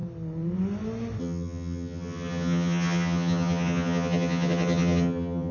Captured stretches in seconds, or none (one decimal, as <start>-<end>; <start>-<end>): 0.0-1.2